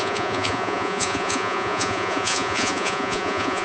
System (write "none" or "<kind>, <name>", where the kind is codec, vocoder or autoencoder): vocoder, Vocos